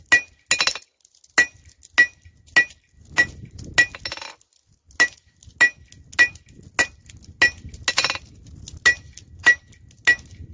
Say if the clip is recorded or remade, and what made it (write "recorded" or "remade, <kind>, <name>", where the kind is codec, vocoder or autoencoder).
recorded